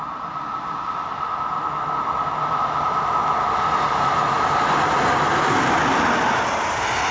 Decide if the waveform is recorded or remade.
recorded